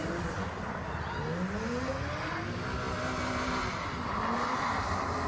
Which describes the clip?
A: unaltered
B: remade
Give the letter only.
A